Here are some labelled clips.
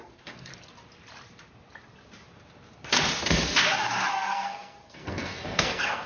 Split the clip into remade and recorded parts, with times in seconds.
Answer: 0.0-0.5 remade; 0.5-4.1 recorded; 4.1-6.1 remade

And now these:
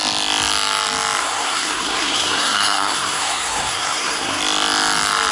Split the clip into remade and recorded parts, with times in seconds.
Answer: 0.0-1.2 recorded; 1.2-4.4 remade; 4.4-5.3 recorded

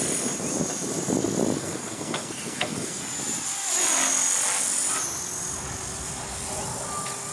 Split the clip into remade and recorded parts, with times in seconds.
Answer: 0.0-1.6 recorded; 1.6-3.0 remade; 3.0-7.3 recorded